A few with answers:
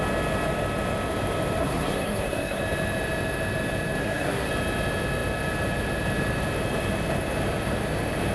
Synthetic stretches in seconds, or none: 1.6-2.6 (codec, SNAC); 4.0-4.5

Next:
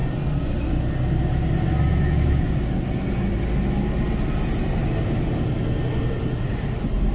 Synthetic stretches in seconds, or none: none

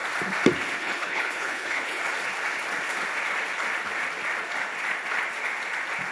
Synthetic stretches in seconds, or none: 0.8-2.0 (codec, HILCodec)